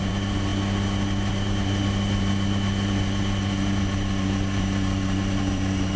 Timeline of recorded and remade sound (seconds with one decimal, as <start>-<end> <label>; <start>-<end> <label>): 0.0-0.5 remade; 0.5-1.3 recorded; 1.3-6.0 remade